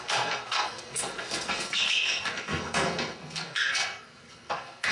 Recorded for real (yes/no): no